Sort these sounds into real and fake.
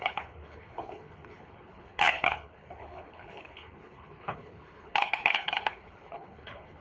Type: fake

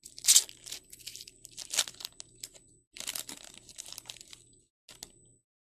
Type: real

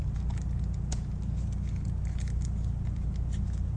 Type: real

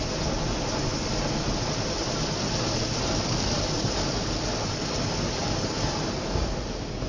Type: real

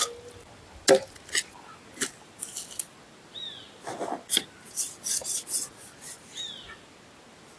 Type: real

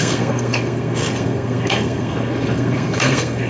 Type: fake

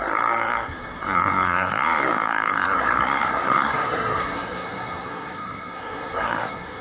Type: fake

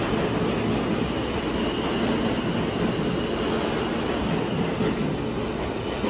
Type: real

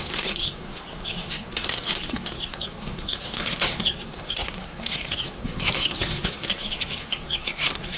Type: fake